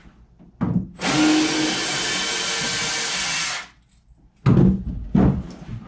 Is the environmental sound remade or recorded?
recorded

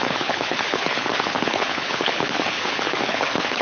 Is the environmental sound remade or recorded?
remade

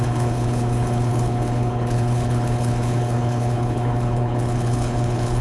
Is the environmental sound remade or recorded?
remade